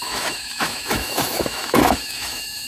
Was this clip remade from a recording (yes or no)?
yes